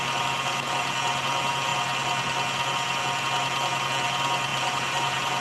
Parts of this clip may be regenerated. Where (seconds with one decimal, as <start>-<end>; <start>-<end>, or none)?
4.5-5.4